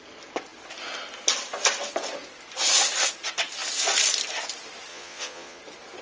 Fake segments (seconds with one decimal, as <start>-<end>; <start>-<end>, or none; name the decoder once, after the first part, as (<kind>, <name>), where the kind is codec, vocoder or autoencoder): 4.9-5.6 (vocoder, Vocos)